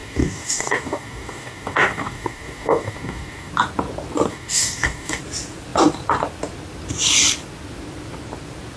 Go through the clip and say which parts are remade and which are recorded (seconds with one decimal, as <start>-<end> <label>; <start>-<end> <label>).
0.0-3.5 remade; 3.5-4.3 recorded; 4.3-5.2 remade; 5.2-8.8 recorded

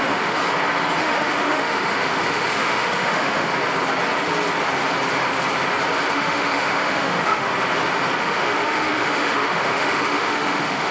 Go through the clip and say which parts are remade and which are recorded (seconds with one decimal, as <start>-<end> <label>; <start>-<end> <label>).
0.0-0.4 remade; 0.4-1.0 recorded; 1.0-3.5 remade; 3.5-6.1 recorded; 6.1-7.5 remade; 7.5-8.2 recorded; 8.2-10.9 remade

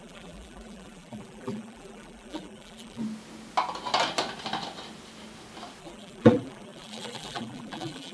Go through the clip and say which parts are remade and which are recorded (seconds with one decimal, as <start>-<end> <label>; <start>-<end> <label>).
0.0-3.0 remade; 3.0-5.8 recorded; 5.8-8.1 remade

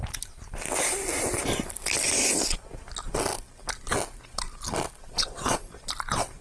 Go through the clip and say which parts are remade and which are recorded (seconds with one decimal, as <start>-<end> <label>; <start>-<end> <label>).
0.0-5.0 recorded; 5.0-5.7 remade; 5.7-6.4 recorded

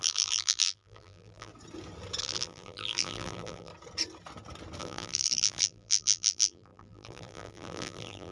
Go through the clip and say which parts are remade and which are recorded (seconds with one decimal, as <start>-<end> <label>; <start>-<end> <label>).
0.0-1.5 remade; 1.5-2.2 recorded; 2.2-3.7 remade; 3.7-4.8 recorded; 4.8-8.3 remade

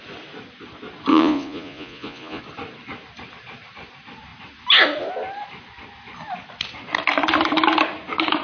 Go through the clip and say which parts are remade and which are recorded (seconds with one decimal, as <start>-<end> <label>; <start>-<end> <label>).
0.0-1.1 recorded; 1.1-2.4 remade; 2.4-8.4 recorded

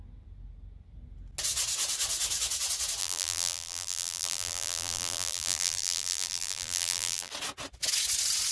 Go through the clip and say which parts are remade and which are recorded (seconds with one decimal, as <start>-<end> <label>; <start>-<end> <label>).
0.0-3.0 recorded; 3.0-7.3 remade; 7.3-8.5 recorded

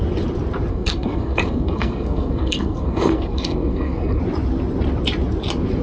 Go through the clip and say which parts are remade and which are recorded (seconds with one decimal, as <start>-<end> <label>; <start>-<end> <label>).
0.0-0.7 recorded; 0.7-4.2 remade; 4.2-5.8 recorded